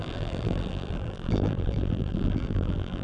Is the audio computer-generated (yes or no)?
yes